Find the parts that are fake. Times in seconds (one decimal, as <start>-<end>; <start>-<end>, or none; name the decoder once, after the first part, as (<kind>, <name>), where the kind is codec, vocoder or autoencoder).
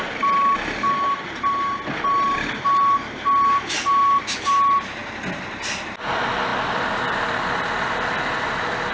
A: none